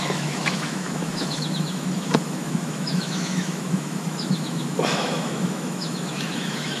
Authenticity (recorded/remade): remade